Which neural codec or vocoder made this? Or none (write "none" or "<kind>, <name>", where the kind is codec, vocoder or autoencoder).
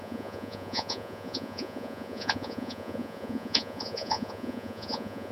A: vocoder, Vocos